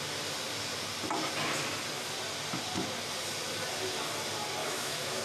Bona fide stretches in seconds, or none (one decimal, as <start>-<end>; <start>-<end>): 0.0-4.6